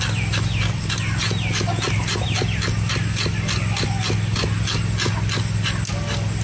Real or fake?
real